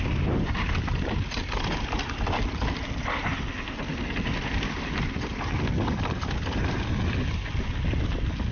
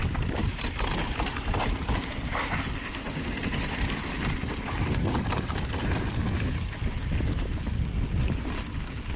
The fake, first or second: second